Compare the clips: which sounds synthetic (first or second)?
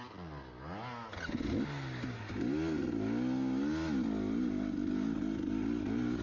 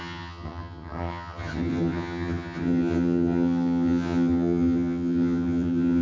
second